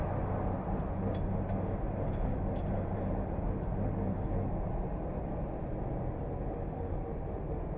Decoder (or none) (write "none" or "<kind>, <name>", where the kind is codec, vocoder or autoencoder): none